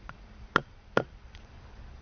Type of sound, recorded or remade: remade